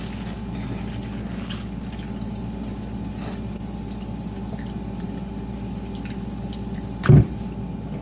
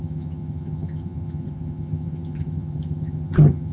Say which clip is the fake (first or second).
second